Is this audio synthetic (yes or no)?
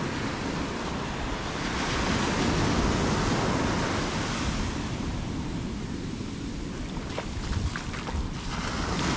no